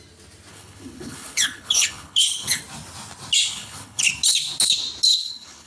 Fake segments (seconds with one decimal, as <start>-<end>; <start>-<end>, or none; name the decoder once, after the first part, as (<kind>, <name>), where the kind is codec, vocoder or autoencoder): 0.5-2.6 (codec, HILCodec); 3.5-4.1; 5.1-5.7